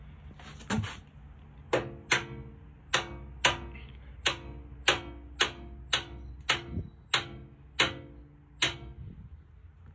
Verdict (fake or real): real